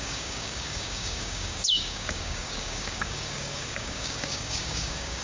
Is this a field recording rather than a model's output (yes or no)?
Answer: no